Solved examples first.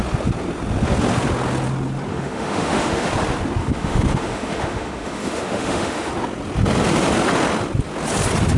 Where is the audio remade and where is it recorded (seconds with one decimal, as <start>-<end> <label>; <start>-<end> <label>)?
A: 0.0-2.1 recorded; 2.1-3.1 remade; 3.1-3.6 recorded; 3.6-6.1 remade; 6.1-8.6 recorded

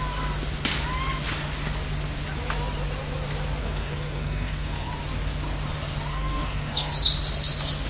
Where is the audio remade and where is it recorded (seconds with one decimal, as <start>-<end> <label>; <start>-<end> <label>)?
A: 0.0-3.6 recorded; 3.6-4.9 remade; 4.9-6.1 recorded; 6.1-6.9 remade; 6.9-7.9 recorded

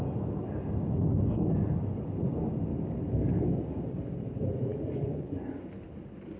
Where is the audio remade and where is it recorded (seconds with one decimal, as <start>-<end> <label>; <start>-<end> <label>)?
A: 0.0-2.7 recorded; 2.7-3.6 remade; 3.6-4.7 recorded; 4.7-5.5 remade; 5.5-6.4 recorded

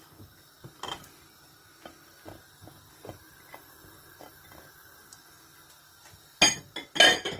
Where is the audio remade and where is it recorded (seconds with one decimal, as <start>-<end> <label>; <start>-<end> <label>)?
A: 0.0-2.6 recorded; 2.6-3.2 remade; 3.2-7.4 recorded

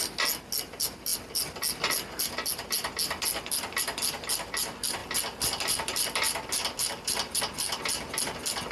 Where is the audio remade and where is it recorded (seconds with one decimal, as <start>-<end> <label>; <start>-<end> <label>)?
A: 0.0-5.0 recorded; 5.0-7.4 remade; 7.4-8.7 recorded

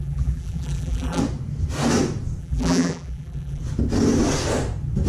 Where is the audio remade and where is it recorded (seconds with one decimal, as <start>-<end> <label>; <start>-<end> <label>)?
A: 0.0-1.2 remade; 1.2-2.4 recorded; 2.4-3.6 remade; 3.6-5.1 recorded